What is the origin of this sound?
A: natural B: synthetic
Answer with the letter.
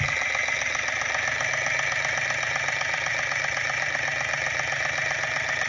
A